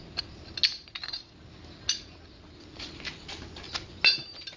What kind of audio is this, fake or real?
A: real